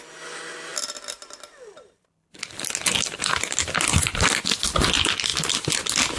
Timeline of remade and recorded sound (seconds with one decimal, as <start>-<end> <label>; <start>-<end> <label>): 0.0-0.7 recorded; 0.7-4.4 remade; 4.4-6.2 recorded